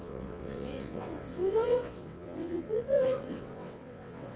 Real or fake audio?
fake